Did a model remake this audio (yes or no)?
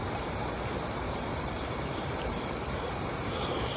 yes